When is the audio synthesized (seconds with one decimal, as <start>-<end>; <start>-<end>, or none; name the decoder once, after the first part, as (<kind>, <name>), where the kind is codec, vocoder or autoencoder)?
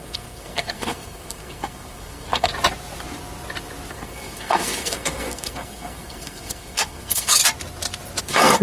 0.0-2.5 (codec, SNAC); 3.9-7.4; 8.2-8.6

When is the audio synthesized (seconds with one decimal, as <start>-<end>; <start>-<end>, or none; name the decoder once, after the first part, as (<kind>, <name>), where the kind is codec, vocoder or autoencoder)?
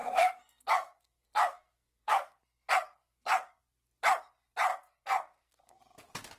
0.0-3.6 (codec, SNAC); 4.7-5.8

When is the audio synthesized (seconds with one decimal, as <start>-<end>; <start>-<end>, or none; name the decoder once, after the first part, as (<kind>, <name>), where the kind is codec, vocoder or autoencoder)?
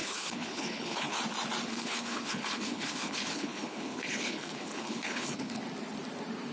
0.0-1.2 (codec, HILCodec); 1.7-5.6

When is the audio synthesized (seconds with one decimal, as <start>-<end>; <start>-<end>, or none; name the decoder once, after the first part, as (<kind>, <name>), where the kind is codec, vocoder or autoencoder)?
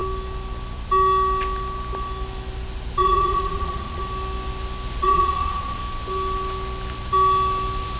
3.0-4.0 (vocoder, Vocos); 5.0-5.8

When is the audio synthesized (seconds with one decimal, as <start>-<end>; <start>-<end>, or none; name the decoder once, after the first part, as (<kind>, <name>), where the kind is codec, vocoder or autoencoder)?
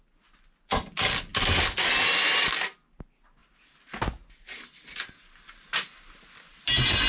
none